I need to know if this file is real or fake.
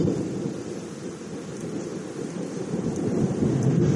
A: real